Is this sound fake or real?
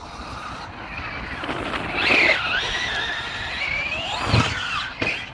real